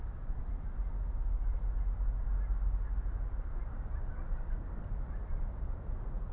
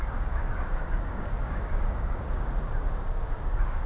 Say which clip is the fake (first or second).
second